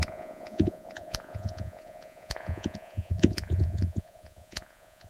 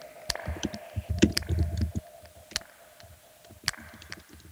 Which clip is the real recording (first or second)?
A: second